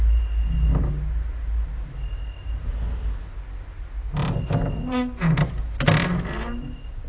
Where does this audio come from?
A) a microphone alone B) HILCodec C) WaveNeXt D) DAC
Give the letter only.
A